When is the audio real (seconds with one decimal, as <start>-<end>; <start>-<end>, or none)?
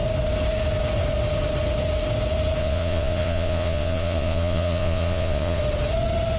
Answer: 0.0-2.6; 5.6-6.4